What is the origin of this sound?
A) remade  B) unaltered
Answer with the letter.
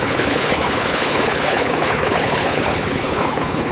A